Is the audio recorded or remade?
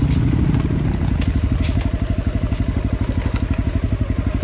recorded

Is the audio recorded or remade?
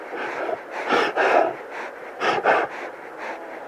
recorded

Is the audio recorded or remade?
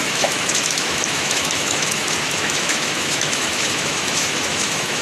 remade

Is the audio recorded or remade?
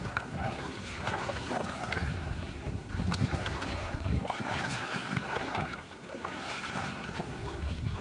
remade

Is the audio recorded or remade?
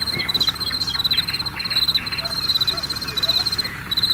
recorded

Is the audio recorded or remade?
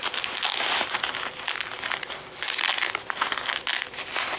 recorded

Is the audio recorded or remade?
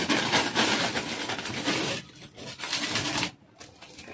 recorded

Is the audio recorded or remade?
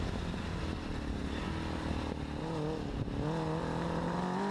recorded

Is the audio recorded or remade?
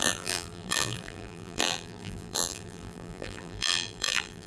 remade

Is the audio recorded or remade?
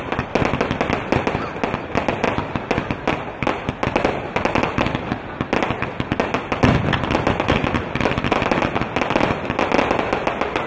recorded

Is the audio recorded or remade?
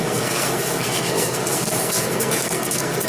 remade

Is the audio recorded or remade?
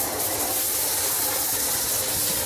recorded